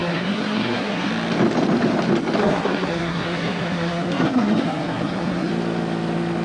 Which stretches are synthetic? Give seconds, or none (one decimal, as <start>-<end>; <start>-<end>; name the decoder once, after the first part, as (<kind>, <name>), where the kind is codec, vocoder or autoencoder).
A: 0.0-1.1 (codec, SNAC); 2.4-5.5